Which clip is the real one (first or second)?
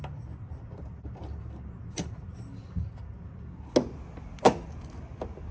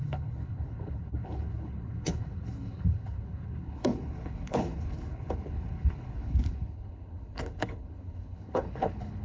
first